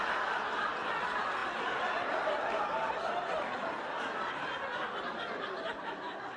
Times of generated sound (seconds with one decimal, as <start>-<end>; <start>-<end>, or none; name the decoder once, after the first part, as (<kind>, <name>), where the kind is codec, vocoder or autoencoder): none